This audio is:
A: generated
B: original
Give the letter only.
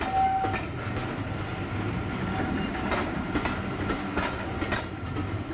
B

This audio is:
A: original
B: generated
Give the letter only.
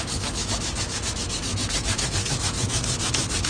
B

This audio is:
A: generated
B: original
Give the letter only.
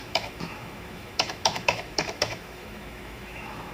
A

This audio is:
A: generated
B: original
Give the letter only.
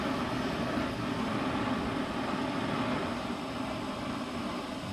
B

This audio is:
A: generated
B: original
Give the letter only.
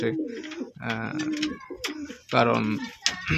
B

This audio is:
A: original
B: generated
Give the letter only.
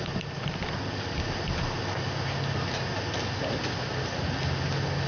A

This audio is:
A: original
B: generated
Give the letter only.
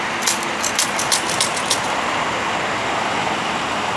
A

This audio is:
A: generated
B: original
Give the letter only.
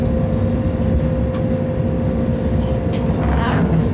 B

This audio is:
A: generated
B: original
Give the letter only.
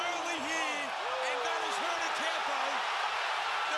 B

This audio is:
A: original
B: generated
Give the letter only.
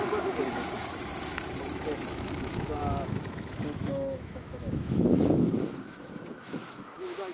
B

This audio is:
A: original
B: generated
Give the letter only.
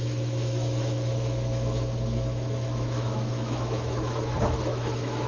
B